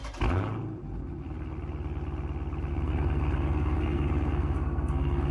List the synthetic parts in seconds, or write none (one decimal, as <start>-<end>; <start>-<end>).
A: 2.7-5.3

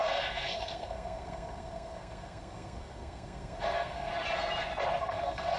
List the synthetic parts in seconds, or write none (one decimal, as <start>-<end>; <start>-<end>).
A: 0.0-4.1; 5.0-5.6

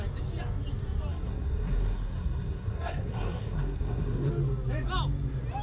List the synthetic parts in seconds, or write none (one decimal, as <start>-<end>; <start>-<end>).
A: 1.1-4.3

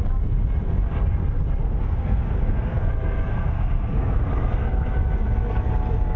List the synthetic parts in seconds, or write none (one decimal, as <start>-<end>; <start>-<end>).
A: 1.6-2.9; 3.3-4.7

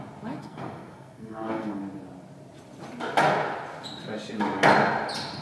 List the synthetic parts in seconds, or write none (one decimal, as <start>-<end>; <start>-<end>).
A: 0.4-1.8

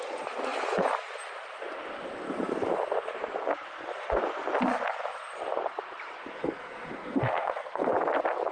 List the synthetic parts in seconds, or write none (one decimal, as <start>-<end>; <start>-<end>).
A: 6.2-7.9